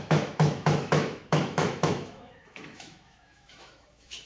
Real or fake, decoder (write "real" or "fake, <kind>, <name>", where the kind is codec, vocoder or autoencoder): fake, autoencoder, DAC-VAE